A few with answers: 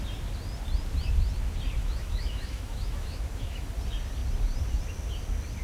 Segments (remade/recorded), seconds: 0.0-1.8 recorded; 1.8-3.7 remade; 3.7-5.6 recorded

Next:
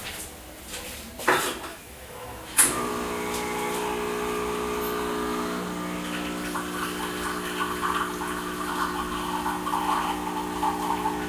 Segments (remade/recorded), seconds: 0.0-1.7 recorded; 1.7-2.9 remade; 2.9-11.3 recorded

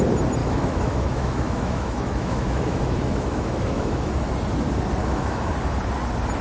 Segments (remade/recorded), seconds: 0.0-0.4 recorded; 0.4-4.2 remade; 4.2-5.0 recorded; 5.0-5.5 remade; 5.5-6.4 recorded

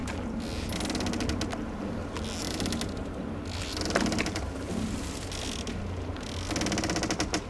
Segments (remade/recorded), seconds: 0.0-7.5 recorded

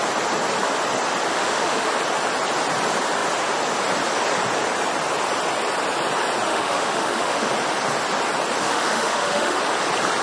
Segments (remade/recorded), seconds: 0.0-1.3 recorded; 1.3-1.9 remade; 1.9-6.5 recorded; 6.5-7.5 remade; 7.5-8.6 recorded; 8.6-9.6 remade; 9.6-10.2 recorded

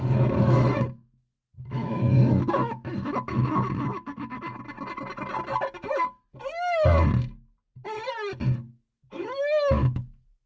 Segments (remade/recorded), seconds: 0.0-4.5 remade; 4.5-8.7 recorded; 8.7-10.5 remade

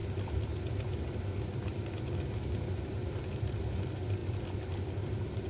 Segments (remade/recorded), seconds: 0.0-5.5 recorded